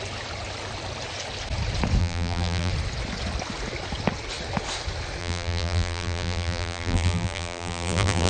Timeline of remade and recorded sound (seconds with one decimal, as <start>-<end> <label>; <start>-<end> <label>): 0.0-2.0 recorded; 2.0-2.7 remade; 2.7-5.2 recorded; 5.2-8.3 remade